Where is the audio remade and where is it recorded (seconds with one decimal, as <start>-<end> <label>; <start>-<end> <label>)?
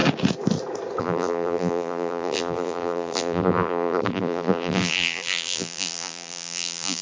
0.0-1.0 recorded; 1.0-7.0 remade